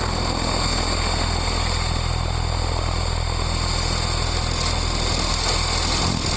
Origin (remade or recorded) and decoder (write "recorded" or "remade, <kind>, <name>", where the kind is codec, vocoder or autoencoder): recorded